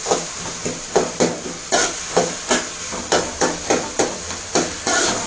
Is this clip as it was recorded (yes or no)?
yes